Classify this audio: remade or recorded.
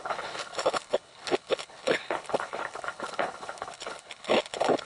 remade